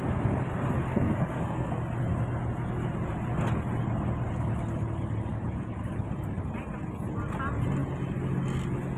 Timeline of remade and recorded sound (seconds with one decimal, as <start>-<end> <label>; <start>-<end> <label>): 0.0-0.8 recorded; 0.8-1.8 remade; 1.8-9.0 recorded